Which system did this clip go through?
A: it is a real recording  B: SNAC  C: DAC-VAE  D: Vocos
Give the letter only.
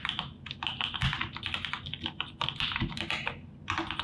A